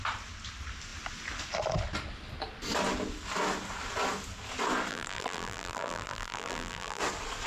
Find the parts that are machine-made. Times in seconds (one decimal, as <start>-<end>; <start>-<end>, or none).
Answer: 4.9-7.0